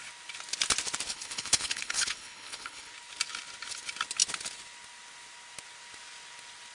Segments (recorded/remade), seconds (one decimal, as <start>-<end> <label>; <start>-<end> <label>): 0.0-1.1 recorded; 1.1-2.9 remade; 2.9-6.7 recorded